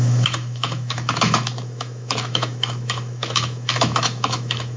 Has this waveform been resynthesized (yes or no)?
yes